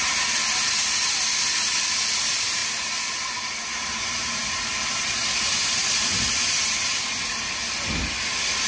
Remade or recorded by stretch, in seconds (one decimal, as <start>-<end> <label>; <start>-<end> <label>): 0.0-8.7 recorded